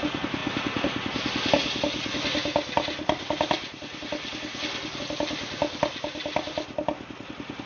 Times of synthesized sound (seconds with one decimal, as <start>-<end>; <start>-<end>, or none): none